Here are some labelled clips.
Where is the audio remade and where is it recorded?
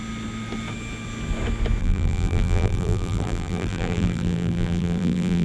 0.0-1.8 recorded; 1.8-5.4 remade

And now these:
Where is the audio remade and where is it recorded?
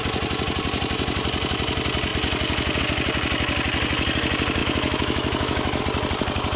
0.0-4.6 recorded; 4.6-5.8 remade; 5.8-6.6 recorded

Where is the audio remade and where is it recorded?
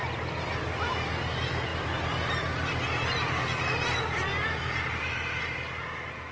0.0-6.3 recorded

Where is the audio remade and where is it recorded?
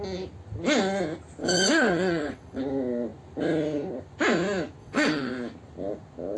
0.0-1.4 recorded; 1.4-2.6 remade; 2.6-4.8 recorded; 4.8-5.3 remade; 5.3-6.4 recorded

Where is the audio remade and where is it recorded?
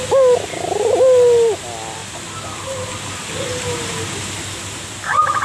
0.0-5.4 recorded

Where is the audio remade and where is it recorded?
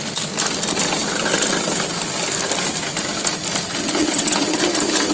0.0-4.0 recorded; 4.0-4.6 remade; 4.6-5.1 recorded